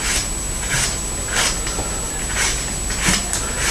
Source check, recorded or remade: recorded